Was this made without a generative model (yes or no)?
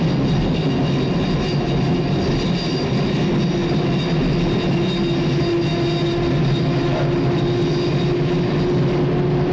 yes